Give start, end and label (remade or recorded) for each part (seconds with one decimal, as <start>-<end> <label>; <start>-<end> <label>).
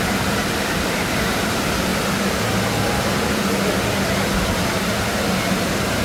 0.0-1.9 remade; 1.9-5.5 recorded; 5.5-6.0 remade